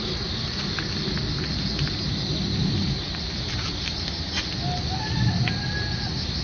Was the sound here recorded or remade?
recorded